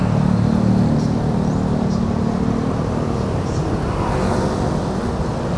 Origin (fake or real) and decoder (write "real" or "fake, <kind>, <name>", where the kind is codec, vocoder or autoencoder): real